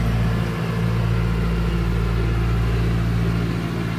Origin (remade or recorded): recorded